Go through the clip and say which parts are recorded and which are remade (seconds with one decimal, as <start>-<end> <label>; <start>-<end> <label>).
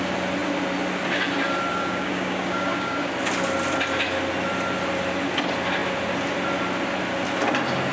0.0-1.7 recorded; 1.7-3.1 remade; 3.1-7.9 recorded